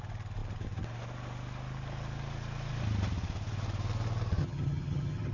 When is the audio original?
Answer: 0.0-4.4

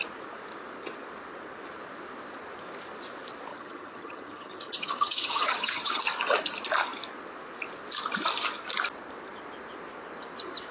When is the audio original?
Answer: 0.0-3.5; 6.0-10.7

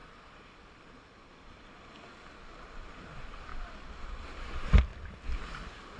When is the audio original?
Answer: 0.0-3.5; 4.2-6.0

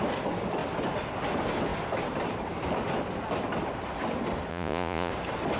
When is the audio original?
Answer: 0.0-4.5; 5.1-5.6

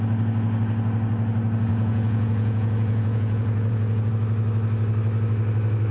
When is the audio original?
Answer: 0.0-1.7; 4.1-5.9